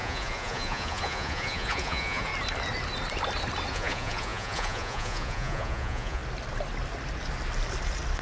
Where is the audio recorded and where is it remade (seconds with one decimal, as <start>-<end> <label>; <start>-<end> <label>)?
0.0-2.3 remade; 2.3-3.7 recorded; 3.7-6.2 remade; 6.2-8.2 recorded